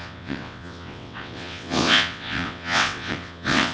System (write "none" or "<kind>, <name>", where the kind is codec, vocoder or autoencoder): vocoder, WaveNeXt